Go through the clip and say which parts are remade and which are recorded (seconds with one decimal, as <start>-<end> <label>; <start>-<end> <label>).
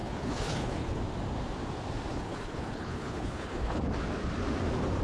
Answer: 0.0-1.0 remade; 1.0-2.1 recorded; 2.1-3.8 remade; 3.8-5.0 recorded